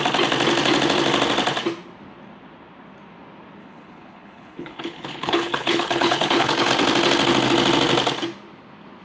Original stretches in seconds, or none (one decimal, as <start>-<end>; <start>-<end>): 0.0-3.6; 6.7-9.0